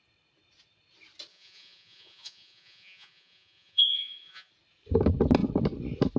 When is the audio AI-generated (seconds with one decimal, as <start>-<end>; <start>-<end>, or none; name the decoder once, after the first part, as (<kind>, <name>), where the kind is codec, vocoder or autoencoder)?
1.3-4.5 (vocoder, Vocos)